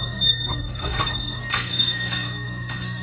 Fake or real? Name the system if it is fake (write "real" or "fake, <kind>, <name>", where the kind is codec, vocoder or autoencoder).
fake, codec, SNAC